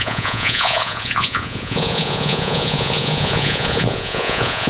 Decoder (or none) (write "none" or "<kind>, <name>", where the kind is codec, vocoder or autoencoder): vocoder, Vocos